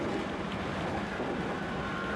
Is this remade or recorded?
recorded